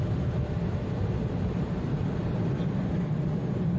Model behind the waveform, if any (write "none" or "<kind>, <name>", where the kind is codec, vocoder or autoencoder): vocoder, BigVGAN v2